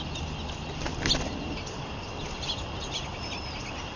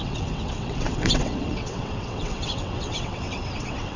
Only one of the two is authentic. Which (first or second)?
first